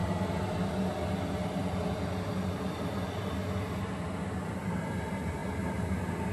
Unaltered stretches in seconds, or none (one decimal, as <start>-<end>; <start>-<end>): 0.0-1.6; 3.3-6.3